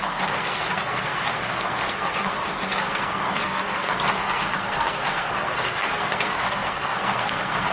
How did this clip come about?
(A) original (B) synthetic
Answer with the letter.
B